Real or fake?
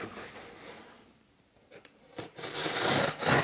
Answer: real